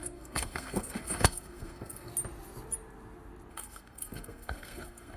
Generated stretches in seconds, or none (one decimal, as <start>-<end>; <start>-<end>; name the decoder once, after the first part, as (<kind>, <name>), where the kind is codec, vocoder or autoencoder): 0.0-2.1 (codec, SNAC); 3.5-5.2